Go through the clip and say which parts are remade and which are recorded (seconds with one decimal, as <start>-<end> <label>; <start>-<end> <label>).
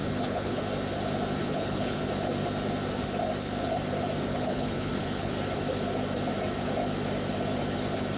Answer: 0.0-0.6 remade; 0.6-1.4 recorded; 1.4-2.0 remade; 2.0-4.3 recorded; 4.3-5.3 remade; 5.3-8.2 recorded